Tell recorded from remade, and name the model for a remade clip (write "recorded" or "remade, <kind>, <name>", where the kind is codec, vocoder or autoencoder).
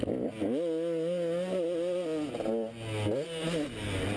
recorded